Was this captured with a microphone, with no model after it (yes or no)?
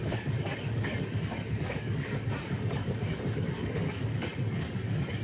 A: no